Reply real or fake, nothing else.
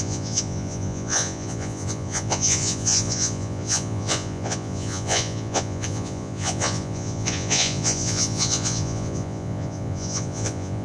fake